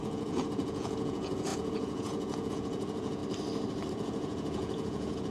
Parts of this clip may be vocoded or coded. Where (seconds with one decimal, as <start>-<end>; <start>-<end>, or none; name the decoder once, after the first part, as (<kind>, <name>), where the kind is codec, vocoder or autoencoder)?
0.0-3.2 (vocoder, Vocos); 3.9-5.3